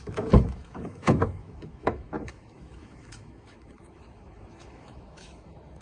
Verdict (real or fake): fake